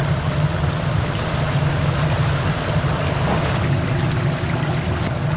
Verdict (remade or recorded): recorded